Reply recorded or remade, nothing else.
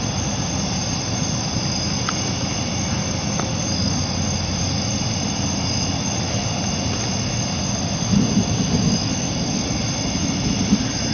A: recorded